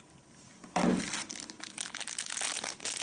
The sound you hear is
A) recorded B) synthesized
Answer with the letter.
A